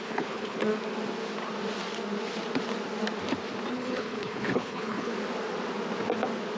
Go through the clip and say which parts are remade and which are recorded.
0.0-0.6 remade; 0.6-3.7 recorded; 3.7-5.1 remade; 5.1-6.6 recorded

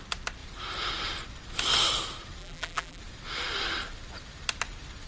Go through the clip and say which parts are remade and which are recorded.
0.0-2.4 recorded; 2.4-3.0 remade; 3.0-5.1 recorded

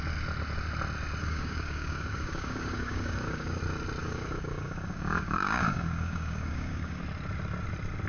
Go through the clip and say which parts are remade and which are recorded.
0.0-1.2 recorded; 1.2-3.6 remade; 3.6-4.0 recorded; 4.0-7.0 remade; 7.0-8.1 recorded

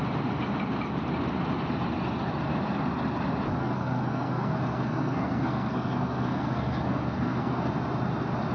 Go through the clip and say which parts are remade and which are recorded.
0.0-3.6 recorded; 3.6-7.7 remade; 7.7-8.5 recorded

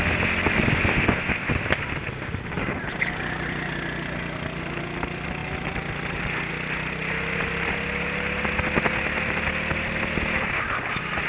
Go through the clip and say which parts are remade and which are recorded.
0.0-0.9 recorded; 0.9-1.5 remade; 1.5-11.3 recorded